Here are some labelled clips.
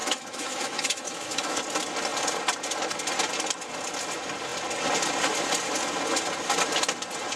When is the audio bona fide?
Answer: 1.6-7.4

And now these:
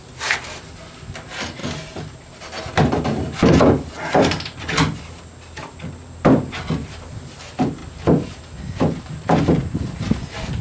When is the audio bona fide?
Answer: 0.0-10.6